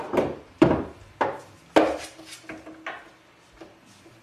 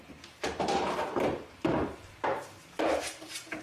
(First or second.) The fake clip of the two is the second